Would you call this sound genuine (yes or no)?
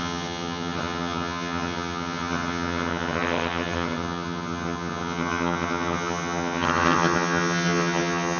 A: no